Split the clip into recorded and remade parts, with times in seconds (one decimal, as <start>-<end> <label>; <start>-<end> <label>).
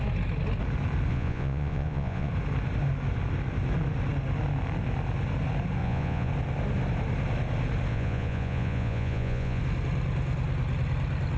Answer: 0.0-1.1 recorded; 1.1-2.3 remade; 2.3-5.8 recorded; 5.8-6.3 remade; 6.3-7.9 recorded; 7.9-9.6 remade; 9.6-11.4 recorded